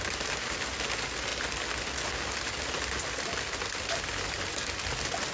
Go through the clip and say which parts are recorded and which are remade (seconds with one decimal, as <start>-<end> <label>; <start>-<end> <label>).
0.0-5.3 recorded